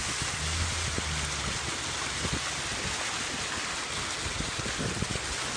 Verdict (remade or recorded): recorded